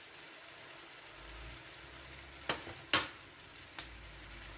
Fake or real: real